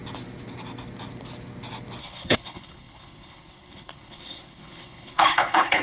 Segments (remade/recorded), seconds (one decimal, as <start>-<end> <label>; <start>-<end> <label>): 0.0-2.0 recorded; 2.0-5.8 remade